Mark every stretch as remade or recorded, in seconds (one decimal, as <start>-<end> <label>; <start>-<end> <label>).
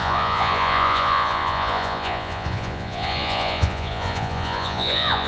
0.0-5.3 remade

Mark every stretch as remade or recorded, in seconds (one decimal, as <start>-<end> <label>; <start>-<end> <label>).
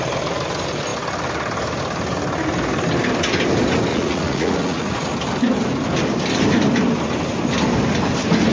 0.0-3.9 recorded; 3.9-5.1 remade; 5.1-8.5 recorded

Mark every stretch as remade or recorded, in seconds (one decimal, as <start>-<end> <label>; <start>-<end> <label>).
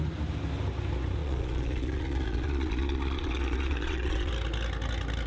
0.0-1.2 recorded; 1.2-4.3 remade; 4.3-5.3 recorded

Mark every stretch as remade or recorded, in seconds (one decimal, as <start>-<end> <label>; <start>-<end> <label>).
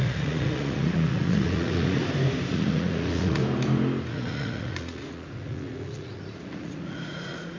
0.0-2.0 remade; 2.0-2.5 recorded; 2.5-3.4 remade; 3.4-4.1 recorded; 4.1-7.6 remade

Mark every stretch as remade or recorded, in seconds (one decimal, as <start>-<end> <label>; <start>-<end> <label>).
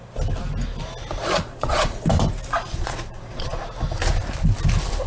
0.0-1.2 recorded; 1.2-2.1 remade; 2.1-2.6 recorded; 2.6-3.6 remade; 3.6-5.1 recorded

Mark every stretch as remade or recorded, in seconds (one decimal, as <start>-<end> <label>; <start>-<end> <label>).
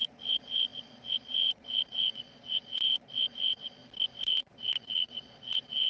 0.0-3.8 remade; 3.8-4.3 recorded; 4.3-5.9 remade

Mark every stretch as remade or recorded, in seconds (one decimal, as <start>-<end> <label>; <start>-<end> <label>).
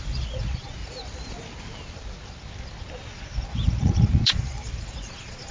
0.0-0.8 remade; 0.8-3.2 recorded; 3.2-5.5 remade